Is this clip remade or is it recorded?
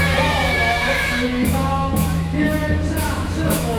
remade